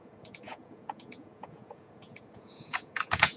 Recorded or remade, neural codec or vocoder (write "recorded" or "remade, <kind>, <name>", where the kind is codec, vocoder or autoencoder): remade, vocoder, Vocos